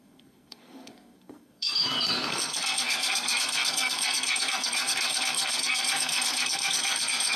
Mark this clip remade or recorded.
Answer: remade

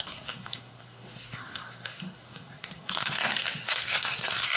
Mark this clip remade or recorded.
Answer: remade